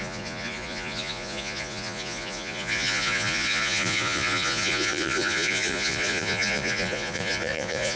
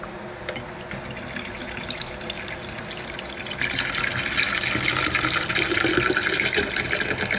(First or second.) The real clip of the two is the second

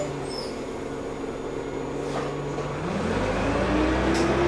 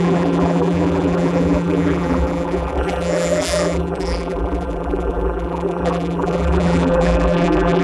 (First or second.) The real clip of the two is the first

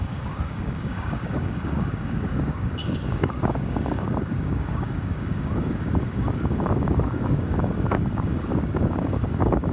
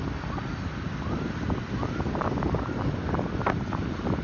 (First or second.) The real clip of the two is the second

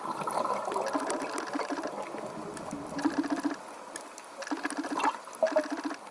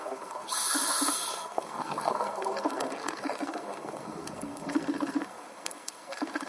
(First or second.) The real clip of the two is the first